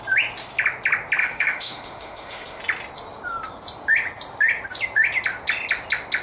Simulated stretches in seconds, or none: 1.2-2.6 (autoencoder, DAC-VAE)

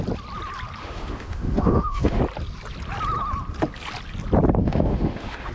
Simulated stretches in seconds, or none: 0.8-2.2 (autoencoder, DAC-VAE); 4.6-5.5